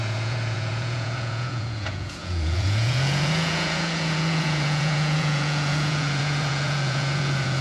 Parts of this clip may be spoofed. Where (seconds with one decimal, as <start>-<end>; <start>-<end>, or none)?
0.0-7.6